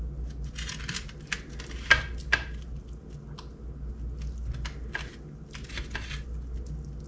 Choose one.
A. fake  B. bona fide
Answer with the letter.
B